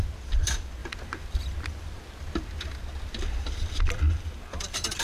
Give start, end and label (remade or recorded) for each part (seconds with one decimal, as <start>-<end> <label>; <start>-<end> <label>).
0.0-0.8 remade; 0.8-3.8 recorded; 3.8-5.0 remade